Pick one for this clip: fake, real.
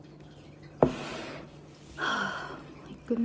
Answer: real